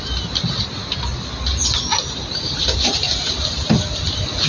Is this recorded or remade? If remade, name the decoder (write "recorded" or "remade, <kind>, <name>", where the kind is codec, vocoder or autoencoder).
recorded